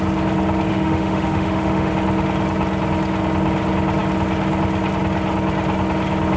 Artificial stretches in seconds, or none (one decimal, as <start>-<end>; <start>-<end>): 0.7-1.9